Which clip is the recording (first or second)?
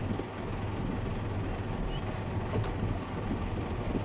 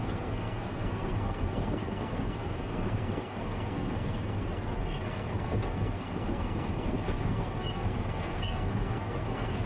first